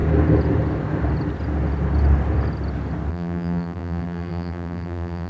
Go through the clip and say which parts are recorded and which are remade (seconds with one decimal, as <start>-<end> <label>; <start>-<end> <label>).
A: 0.0-3.1 recorded; 3.1-5.3 remade